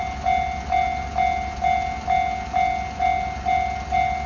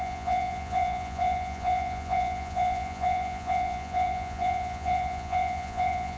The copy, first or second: second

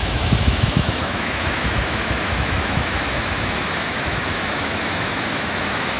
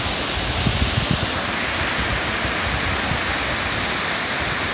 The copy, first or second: first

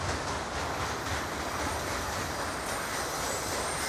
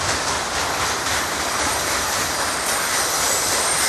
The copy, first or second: second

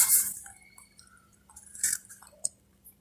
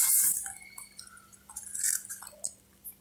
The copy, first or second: first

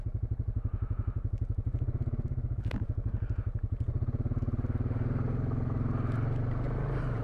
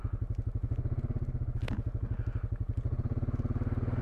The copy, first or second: first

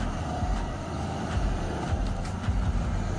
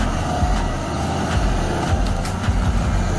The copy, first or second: first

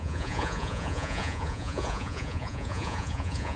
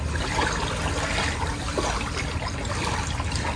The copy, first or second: first